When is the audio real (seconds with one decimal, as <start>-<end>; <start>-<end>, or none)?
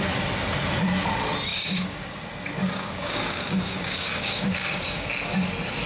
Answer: 0.0-1.5; 2.2-2.6; 5.1-5.9